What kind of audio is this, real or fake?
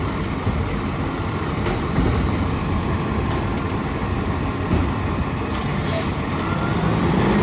real